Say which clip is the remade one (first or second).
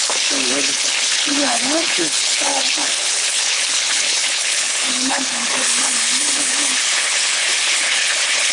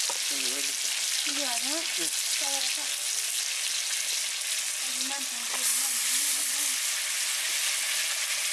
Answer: first